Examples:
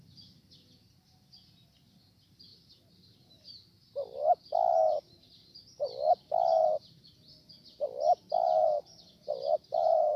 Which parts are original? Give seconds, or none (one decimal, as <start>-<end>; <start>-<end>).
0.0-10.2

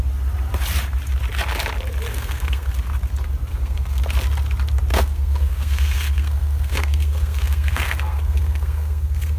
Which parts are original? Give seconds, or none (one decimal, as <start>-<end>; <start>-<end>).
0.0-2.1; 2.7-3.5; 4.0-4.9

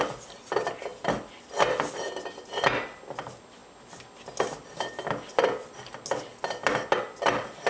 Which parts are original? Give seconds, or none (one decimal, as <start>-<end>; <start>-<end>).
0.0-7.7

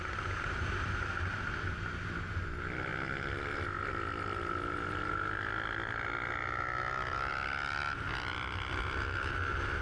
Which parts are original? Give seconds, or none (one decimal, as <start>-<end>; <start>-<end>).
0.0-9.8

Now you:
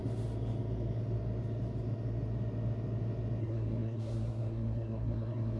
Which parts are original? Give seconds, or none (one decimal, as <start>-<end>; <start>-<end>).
0.0-3.4

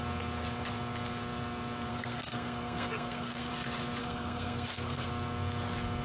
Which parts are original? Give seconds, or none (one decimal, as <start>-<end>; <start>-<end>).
0.0-1.9; 3.5-4.0; 5.1-6.0